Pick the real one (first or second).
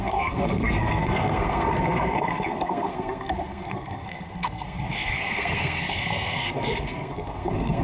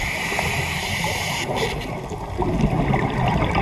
second